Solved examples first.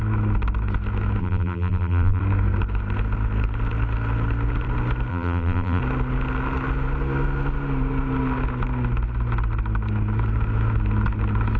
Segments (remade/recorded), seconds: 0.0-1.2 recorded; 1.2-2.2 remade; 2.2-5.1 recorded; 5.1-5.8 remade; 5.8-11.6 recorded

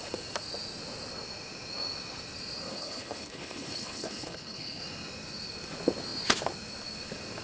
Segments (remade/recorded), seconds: 0.0-2.7 recorded; 2.7-4.8 remade; 4.8-7.4 recorded

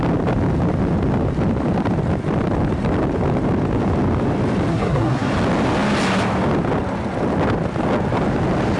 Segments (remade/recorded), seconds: 0.0-4.7 recorded; 4.7-5.3 remade; 5.3-8.8 recorded

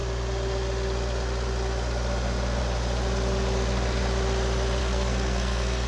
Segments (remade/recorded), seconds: 0.0-4.8 recorded; 4.8-5.9 remade

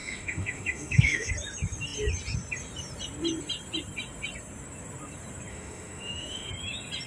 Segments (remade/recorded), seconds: 0.0-1.3 remade; 1.3-5.5 recorded; 5.5-6.5 remade; 6.5-7.1 recorded

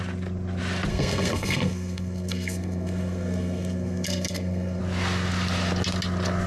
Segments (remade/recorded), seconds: 0.0-0.9 recorded; 0.9-4.8 remade; 4.8-6.5 recorded

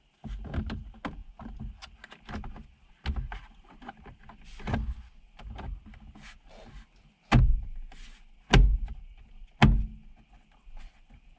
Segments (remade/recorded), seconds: 0.0-11.4 recorded